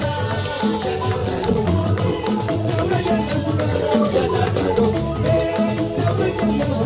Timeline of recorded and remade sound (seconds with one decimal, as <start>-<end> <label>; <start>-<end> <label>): 0.0-1.2 recorded; 1.2-3.0 remade; 3.0-3.7 recorded; 3.7-4.8 remade; 4.8-6.9 recorded

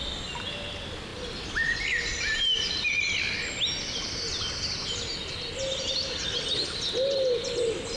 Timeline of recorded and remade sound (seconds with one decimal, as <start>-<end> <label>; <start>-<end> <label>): 0.0-8.0 recorded

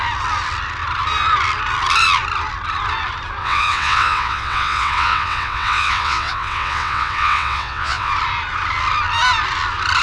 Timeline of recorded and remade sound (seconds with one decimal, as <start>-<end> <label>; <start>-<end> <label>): 0.0-3.4 recorded; 3.4-8.1 remade; 8.1-10.0 recorded

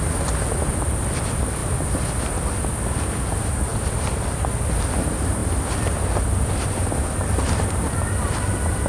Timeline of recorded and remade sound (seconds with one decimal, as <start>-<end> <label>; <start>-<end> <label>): 0.0-8.9 recorded

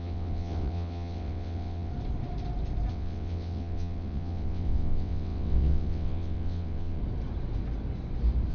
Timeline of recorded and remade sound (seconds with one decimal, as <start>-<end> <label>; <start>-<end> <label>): 0.0-1.9 remade; 1.9-2.9 recorded; 2.9-7.0 remade; 7.0-8.5 recorded

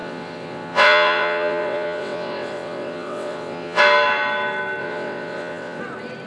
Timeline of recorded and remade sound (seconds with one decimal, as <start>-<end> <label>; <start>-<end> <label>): 0.0-3.8 remade; 3.8-4.8 recorded; 4.8-5.8 remade; 5.8-6.3 recorded

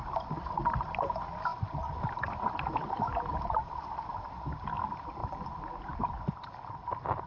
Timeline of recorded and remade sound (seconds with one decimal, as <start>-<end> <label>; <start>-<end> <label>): 0.0-7.3 recorded